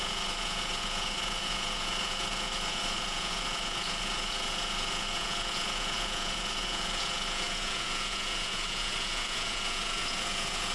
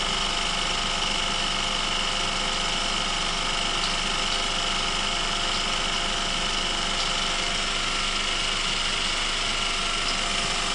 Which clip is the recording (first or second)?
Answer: second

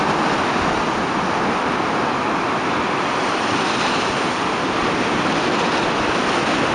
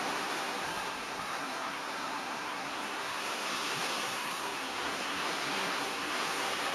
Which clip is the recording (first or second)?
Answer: first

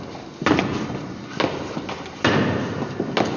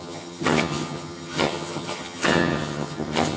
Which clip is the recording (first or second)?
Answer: first